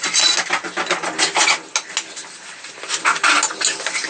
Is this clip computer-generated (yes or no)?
no